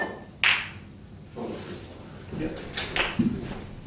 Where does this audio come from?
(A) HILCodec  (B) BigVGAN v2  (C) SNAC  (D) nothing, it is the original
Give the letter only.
D